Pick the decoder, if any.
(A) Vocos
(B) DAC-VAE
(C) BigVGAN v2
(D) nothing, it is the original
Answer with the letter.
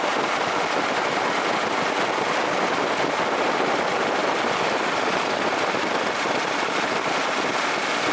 D